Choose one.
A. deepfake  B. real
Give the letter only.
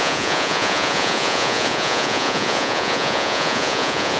A